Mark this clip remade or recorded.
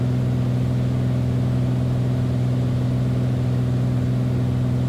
recorded